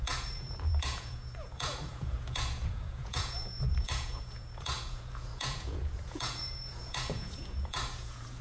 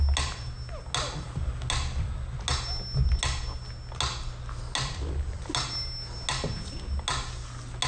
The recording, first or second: second